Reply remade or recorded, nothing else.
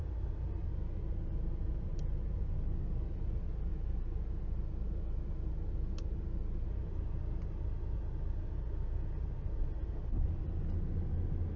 recorded